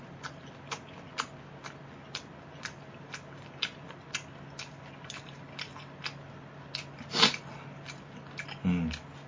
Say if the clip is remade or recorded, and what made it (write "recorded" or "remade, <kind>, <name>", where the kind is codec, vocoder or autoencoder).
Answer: recorded